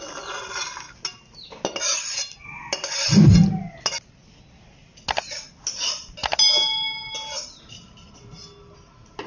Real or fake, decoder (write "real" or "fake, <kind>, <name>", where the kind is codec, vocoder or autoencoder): real